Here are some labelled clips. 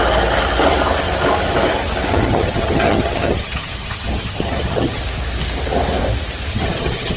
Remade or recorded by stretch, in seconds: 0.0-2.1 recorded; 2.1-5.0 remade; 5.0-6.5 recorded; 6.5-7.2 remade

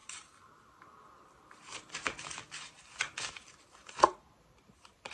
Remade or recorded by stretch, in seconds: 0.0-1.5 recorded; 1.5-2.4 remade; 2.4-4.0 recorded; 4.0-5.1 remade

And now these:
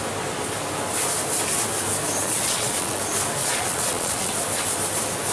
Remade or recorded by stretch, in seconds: 0.0-2.2 recorded; 2.2-3.0 remade; 3.0-3.4 recorded; 3.4-4.3 remade; 4.3-5.3 recorded

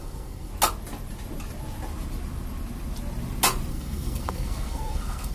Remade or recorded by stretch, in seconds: 0.0-0.5 remade; 0.5-3.7 recorded; 3.7-5.3 remade

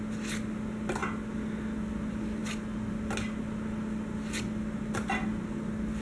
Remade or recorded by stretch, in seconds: 0.0-6.0 recorded